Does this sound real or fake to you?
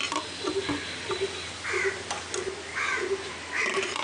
real